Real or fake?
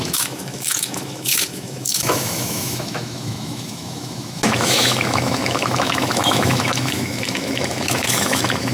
fake